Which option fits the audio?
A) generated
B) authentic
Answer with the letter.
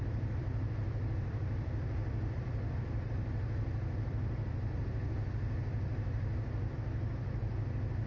A